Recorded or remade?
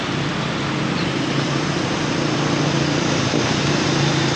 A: recorded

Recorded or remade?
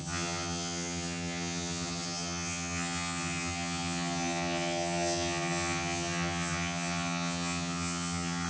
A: remade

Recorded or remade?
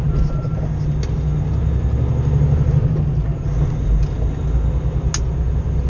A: recorded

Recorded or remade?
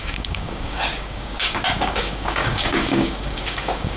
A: remade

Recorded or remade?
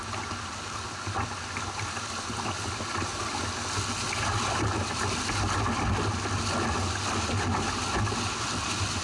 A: recorded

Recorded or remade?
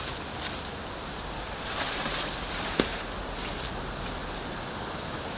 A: recorded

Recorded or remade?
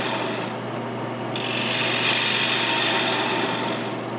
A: recorded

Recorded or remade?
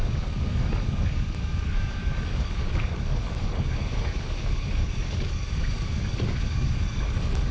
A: remade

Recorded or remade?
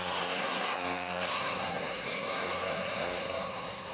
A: remade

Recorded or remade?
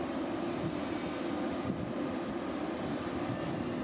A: recorded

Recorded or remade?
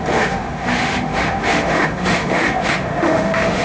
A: remade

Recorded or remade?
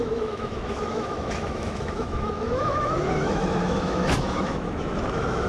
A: remade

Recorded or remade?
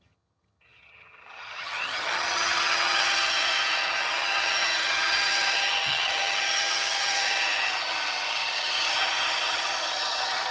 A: remade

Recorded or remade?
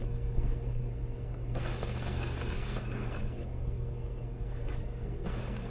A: remade